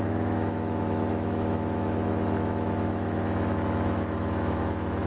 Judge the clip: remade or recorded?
remade